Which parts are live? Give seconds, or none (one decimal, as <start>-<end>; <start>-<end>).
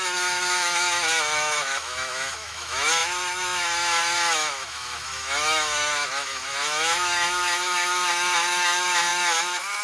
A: none